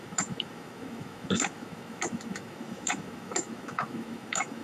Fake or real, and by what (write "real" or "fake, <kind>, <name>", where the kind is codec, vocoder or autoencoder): fake, autoencoder, DAC-VAE